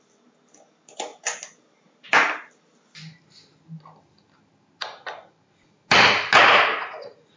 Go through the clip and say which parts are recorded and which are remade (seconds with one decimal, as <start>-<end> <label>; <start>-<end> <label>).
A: 0.0-7.4 recorded